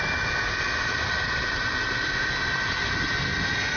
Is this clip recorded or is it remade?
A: recorded